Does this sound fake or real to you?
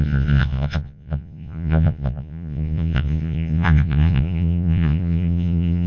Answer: fake